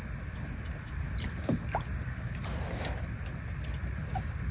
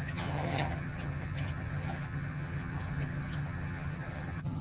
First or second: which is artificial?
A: second